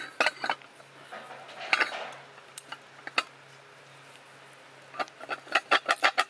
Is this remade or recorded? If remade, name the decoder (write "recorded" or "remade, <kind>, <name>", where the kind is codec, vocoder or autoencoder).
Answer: recorded